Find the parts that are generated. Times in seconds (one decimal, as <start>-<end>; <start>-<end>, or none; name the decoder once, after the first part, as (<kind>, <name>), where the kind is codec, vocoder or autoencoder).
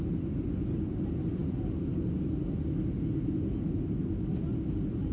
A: none